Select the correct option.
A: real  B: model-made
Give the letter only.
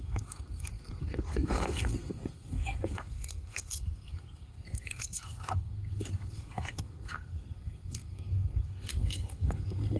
B